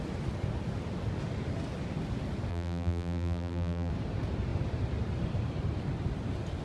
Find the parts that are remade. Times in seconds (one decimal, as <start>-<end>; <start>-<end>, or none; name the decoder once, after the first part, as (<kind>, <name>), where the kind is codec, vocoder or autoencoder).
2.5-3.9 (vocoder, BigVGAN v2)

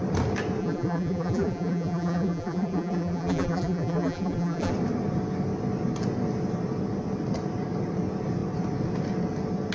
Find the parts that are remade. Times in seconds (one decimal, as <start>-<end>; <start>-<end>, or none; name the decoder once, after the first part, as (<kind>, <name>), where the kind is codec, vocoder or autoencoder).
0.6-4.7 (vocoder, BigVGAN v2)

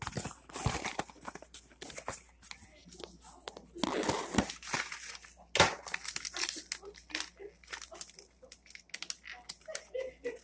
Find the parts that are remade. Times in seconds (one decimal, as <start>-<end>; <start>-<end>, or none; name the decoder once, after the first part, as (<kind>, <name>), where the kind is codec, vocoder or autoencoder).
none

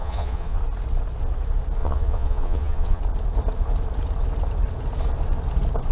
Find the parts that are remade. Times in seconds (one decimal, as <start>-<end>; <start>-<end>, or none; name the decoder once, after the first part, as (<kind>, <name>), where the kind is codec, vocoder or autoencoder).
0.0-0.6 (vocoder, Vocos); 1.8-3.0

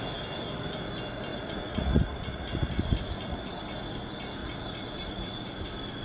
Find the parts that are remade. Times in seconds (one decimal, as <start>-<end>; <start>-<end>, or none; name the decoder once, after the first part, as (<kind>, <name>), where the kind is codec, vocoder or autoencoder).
1.3-3.6 (vocoder, Vocos); 4.4-5.5

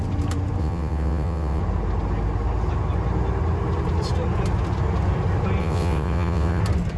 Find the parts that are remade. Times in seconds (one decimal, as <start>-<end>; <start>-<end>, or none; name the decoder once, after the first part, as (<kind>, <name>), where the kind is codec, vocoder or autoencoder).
0.6-1.6 (vocoder, WaveNeXt); 5.6-6.6

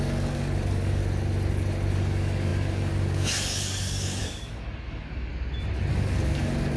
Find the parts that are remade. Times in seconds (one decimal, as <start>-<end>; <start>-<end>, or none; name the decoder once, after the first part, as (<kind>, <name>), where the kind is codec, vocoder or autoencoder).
0.0-1.0 (codec, DAC); 1.9-5.3; 5.9-6.8